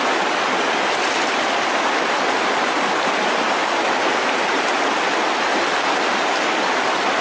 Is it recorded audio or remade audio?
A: remade